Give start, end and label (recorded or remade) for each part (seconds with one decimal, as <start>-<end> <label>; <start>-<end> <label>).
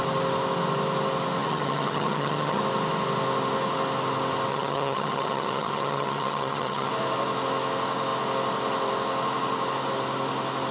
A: 0.0-1.4 recorded; 1.4-2.6 remade; 2.6-4.5 recorded; 4.5-6.9 remade; 6.9-10.7 recorded